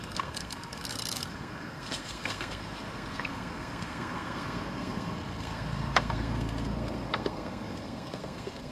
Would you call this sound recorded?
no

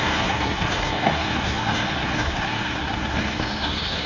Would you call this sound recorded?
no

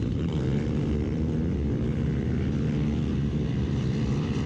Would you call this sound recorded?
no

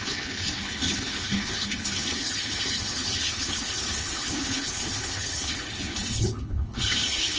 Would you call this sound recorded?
no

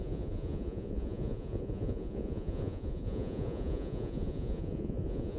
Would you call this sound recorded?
no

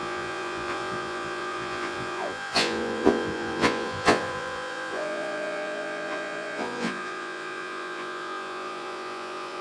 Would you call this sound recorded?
no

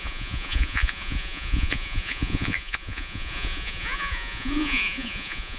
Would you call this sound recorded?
no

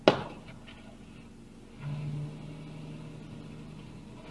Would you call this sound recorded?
yes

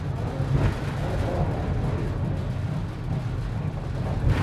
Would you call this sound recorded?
yes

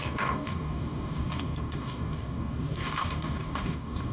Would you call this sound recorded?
no